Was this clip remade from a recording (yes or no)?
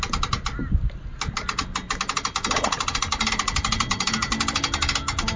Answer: no